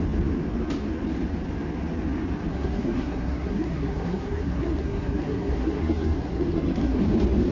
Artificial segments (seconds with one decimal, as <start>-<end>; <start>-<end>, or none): 2.5-7.0